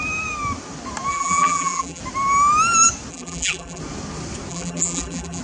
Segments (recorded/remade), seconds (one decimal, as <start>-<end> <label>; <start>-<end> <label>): 0.0-1.1 recorded; 1.1-2.0 remade; 2.0-3.1 recorded; 3.1-3.8 remade; 3.8-4.5 recorded; 4.5-5.4 remade